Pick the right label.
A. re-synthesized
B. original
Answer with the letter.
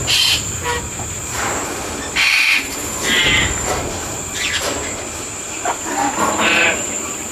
A